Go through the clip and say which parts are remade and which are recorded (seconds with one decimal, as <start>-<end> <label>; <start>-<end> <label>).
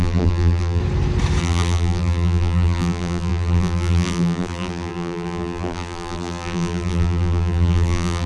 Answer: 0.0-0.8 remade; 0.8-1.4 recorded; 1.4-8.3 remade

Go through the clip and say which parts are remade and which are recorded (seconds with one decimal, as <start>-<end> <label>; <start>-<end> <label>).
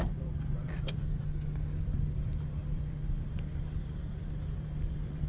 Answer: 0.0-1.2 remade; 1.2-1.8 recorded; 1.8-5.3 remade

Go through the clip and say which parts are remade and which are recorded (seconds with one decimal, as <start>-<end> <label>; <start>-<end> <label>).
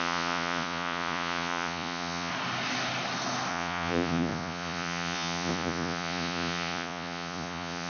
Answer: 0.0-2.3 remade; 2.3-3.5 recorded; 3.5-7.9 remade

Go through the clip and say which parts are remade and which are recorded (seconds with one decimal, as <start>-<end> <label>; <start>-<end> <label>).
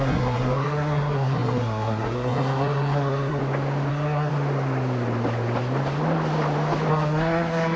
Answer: 0.0-3.4 remade; 3.4-3.9 recorded; 3.9-4.3 remade; 4.3-6.9 recorded; 6.9-7.8 remade